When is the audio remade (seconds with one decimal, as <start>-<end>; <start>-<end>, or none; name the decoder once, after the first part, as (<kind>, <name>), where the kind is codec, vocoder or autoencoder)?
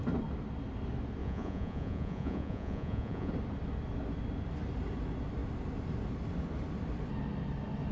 1.2-3.3 (vocoder, Vocos)